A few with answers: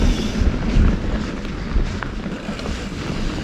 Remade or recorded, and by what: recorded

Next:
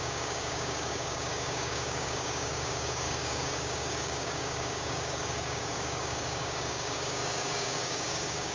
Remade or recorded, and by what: remade, codec, DAC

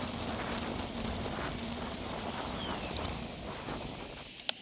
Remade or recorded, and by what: recorded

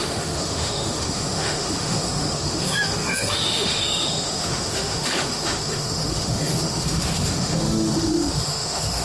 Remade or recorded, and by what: remade, autoencoder, DAC-VAE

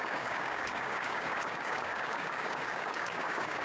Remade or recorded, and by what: remade, codec, DAC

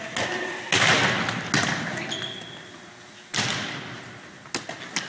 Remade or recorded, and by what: recorded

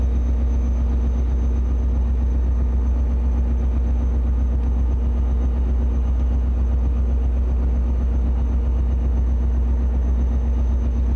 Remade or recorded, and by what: recorded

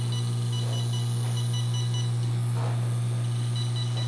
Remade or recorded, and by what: recorded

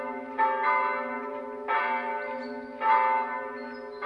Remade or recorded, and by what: recorded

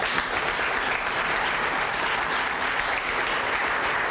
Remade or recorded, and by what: recorded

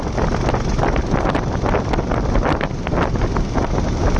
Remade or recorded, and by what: recorded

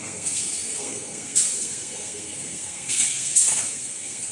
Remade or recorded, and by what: remade, codec, SNAC